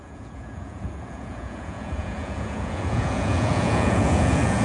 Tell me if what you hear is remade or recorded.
remade